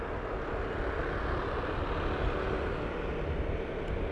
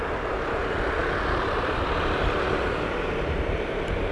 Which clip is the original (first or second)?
first